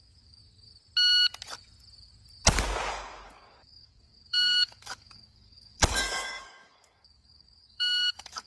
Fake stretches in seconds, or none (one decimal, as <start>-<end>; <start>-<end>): 0.0-0.4; 2.9-8.5